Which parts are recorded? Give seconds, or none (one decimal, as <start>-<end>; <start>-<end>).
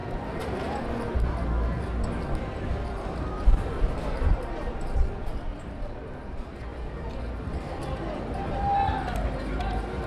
0.0-10.1